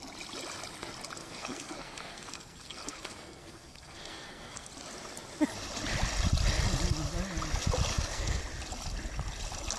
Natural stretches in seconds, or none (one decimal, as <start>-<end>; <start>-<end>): 0.0-1.2; 4.7-7.9; 8.4-9.8